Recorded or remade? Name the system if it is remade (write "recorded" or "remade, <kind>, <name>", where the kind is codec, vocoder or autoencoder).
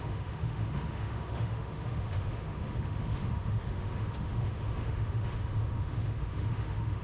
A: remade, autoencoder, DAC-VAE